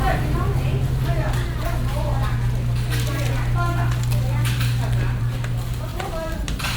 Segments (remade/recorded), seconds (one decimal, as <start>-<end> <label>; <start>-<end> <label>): 0.0-5.9 recorded; 5.9-6.8 remade